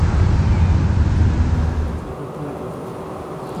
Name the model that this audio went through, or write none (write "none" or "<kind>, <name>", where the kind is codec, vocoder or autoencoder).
none